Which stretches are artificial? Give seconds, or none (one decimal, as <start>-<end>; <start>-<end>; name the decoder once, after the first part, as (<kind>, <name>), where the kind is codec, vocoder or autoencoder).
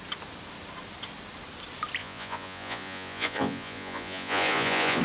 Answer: 2.0-5.0 (vocoder, Vocos)